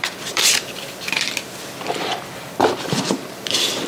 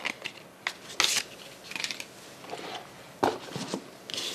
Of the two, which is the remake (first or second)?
first